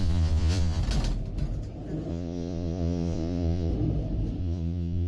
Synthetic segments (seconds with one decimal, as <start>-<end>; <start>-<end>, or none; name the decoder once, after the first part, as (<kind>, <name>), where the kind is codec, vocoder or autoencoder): 0.0-0.8 (vocoder, Vocos); 2.1-3.7; 4.4-5.1